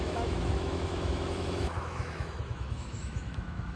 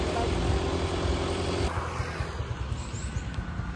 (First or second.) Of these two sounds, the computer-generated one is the first